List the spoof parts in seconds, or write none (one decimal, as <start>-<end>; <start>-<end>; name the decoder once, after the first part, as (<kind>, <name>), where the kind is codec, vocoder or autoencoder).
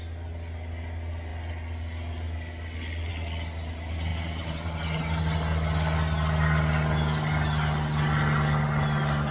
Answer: 4.1-5.0 (vocoder, BigVGAN v2)